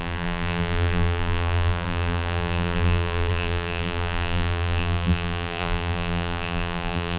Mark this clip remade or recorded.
remade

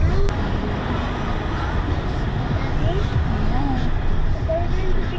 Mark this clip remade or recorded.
recorded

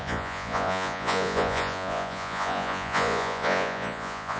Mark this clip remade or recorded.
remade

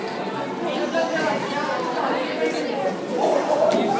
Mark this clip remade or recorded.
recorded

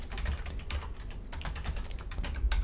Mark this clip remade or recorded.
recorded